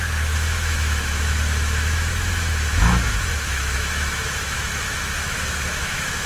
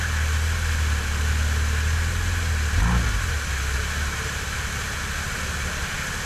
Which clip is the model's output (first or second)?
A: first